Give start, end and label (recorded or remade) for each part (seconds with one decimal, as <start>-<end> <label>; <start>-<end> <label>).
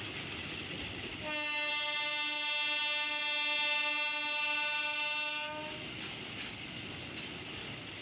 0.0-8.0 recorded